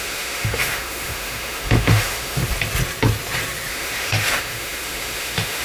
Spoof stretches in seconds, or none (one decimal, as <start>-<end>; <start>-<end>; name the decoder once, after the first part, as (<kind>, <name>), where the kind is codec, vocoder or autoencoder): 0.0-2.4 (autoencoder, DAC-VAE); 3.7-5.6

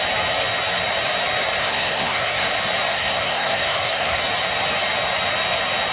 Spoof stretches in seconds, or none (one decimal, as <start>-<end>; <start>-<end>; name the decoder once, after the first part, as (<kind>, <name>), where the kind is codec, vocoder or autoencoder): 1.6-2.5 (codec, SNAC); 2.9-4.2

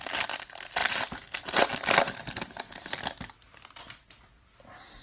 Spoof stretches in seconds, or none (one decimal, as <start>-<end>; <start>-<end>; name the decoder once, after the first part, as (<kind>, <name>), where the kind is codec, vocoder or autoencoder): none

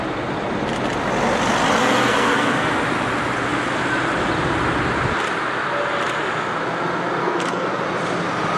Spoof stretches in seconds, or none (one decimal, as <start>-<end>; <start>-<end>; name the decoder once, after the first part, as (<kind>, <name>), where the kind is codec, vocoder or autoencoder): 1.8-2.7 (codec, SNAC); 7.2-7.8

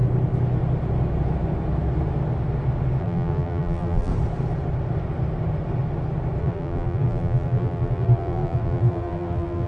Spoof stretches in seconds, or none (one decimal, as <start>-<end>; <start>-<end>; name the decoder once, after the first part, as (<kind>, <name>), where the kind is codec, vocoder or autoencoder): 3.0-4.1 (vocoder, BigVGAN v2); 6.4-9.7

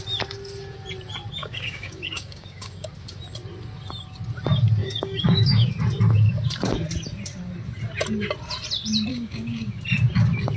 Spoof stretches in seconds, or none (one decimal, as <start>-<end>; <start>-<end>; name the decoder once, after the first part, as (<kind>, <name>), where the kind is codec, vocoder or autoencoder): 1.4-2.9 (codec, DAC); 4.8-5.7; 9.1-9.8

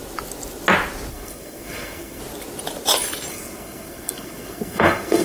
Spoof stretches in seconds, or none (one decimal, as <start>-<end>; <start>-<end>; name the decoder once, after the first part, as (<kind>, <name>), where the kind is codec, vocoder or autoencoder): 1.1-2.2 (codec, SNAC); 3.3-5.2